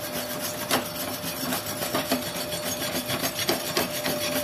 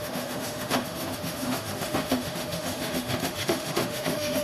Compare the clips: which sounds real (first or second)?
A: first